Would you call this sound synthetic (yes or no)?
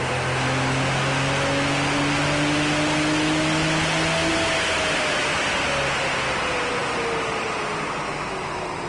no